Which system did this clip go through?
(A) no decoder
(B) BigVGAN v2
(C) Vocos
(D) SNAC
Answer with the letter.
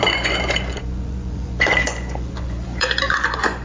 C